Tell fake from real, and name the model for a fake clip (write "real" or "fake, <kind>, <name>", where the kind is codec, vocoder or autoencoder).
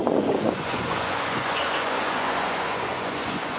fake, vocoder, Vocos